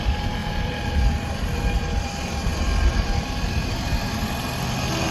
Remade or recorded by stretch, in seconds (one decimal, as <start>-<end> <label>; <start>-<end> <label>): 0.0-5.1 recorded